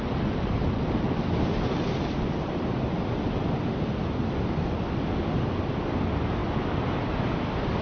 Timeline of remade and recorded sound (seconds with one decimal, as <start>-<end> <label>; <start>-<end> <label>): 0.0-7.8 recorded